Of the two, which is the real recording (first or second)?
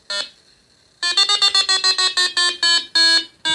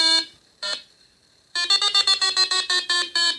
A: first